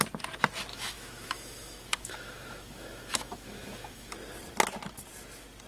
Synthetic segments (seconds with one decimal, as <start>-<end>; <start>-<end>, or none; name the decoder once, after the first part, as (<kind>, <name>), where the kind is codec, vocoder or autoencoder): 0.7-4.1 (autoencoder, DAC-VAE)